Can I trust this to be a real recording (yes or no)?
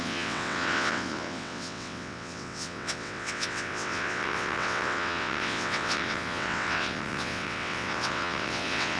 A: no